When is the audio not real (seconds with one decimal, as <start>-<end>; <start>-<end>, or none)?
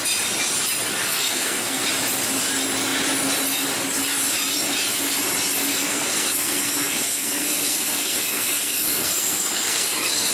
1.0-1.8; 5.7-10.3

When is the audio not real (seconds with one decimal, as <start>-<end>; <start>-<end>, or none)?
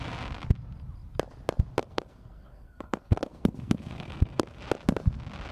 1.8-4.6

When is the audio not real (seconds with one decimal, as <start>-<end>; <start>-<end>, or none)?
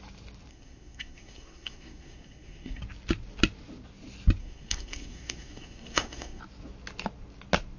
0.5-2.8; 4.4-6.4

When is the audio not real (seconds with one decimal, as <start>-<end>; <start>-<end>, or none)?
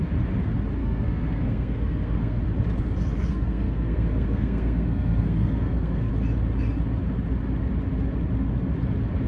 0.8-2.4; 3.3-6.1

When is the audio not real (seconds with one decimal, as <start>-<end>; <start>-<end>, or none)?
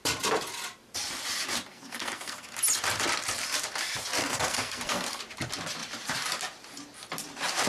1.7-2.6; 4.2-5.2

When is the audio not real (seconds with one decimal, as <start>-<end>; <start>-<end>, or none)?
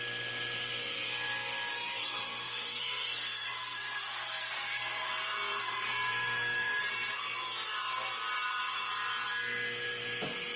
1.7-5.1; 5.6-6.8